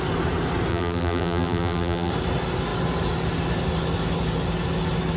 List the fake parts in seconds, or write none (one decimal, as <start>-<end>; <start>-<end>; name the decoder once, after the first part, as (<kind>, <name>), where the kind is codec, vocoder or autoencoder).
0.7-2.1 (vocoder, BigVGAN v2)